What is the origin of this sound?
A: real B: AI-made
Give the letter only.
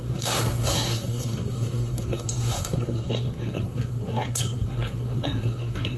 B